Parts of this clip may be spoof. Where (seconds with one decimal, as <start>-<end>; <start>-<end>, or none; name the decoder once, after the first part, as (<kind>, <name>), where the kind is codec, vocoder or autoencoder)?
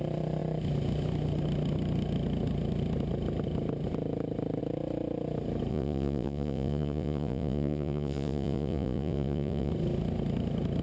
5.7-9.7 (vocoder, Vocos)